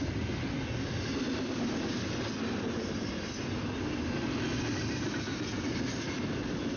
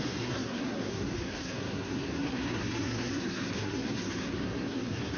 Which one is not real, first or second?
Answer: second